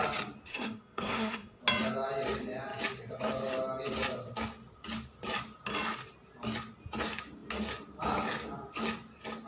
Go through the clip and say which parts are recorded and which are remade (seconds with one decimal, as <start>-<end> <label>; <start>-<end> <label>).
0.0-0.5 recorded; 0.5-1.6 remade; 1.6-9.5 recorded